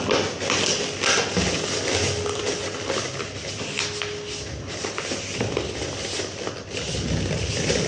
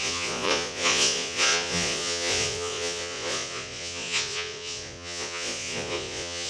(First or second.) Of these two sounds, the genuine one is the first